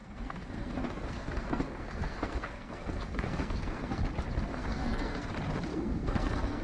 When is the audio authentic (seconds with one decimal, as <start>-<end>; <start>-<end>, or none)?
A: 4.0-4.5; 5.3-5.7